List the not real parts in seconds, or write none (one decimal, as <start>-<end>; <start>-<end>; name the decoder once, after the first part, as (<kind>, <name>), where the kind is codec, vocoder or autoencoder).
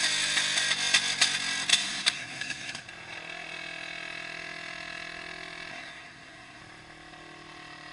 1.7-2.8 (codec, SNAC); 5.7-6.6